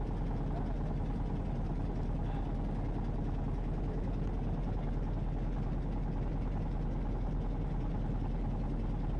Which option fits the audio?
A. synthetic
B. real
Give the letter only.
B